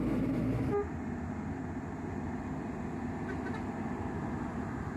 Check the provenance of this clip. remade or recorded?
recorded